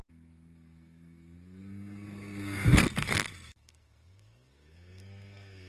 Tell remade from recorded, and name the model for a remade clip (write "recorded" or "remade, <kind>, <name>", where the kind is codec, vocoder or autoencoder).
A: remade, codec, SNAC